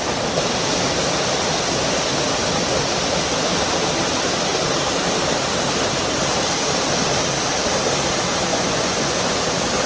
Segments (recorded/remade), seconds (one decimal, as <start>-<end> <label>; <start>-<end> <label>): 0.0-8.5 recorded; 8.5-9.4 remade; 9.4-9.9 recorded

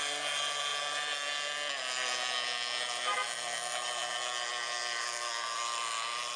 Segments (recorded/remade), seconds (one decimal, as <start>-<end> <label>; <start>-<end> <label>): 0.0-6.4 recorded

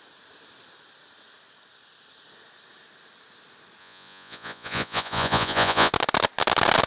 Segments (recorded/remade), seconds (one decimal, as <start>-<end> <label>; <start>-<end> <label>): 0.0-3.8 recorded; 3.8-5.9 remade; 5.9-6.9 recorded